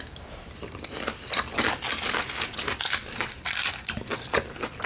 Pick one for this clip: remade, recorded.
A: recorded